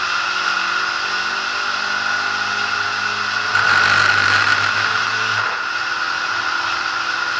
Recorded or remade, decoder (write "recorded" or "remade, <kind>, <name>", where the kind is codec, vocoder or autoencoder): recorded